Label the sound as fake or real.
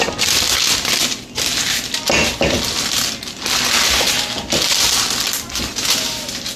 real